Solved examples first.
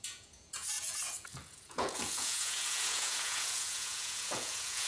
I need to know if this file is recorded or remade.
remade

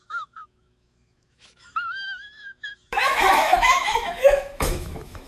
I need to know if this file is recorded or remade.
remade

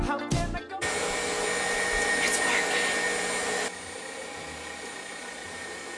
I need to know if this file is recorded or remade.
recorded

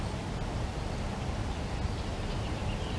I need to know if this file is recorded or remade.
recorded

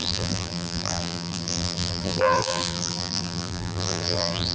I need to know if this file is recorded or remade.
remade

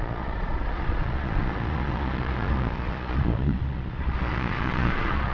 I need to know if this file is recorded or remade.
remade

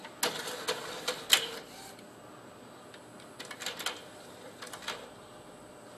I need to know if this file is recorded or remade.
recorded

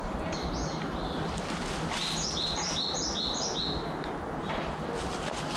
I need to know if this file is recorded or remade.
recorded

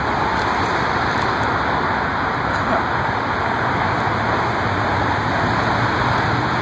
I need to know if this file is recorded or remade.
recorded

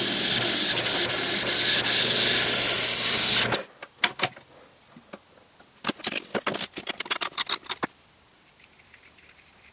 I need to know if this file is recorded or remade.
recorded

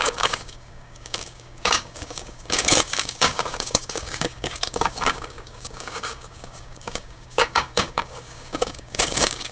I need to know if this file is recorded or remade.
remade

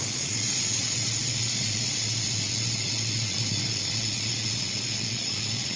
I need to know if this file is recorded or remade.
remade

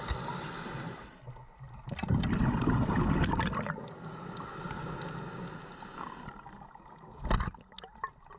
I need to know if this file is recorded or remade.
recorded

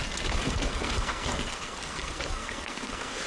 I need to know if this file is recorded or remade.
remade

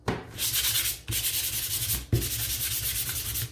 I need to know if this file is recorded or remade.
recorded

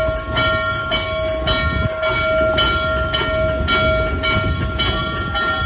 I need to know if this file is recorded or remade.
recorded